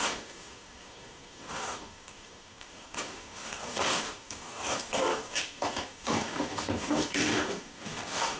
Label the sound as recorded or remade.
remade